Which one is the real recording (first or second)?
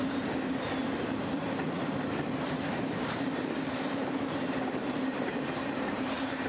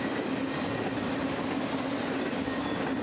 second